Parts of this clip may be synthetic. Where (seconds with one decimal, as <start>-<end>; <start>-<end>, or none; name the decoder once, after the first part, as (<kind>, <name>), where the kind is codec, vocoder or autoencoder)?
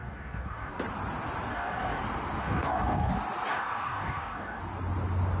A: 0.0-0.7 (codec, DAC); 1.5-2.0; 2.4-3.1; 3.5-4.6